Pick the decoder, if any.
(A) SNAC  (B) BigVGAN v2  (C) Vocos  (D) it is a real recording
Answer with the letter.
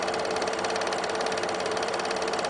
B